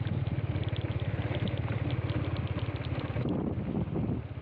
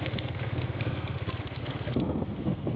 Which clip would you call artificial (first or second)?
second